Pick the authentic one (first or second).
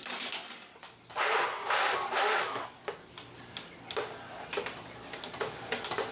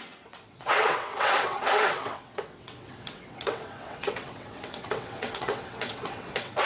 first